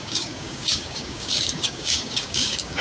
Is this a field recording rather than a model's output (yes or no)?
no